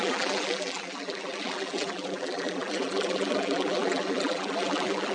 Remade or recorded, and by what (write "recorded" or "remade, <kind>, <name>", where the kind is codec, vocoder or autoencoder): remade, vocoder, BigVGAN v2